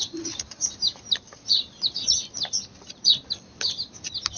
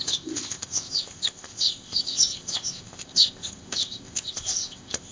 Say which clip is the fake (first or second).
second